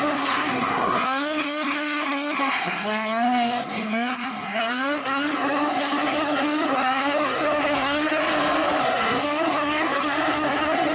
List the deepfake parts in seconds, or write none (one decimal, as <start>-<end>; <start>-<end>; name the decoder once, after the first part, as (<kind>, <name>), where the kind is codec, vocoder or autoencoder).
0.0-8.2 (codec, SNAC); 8.8-10.9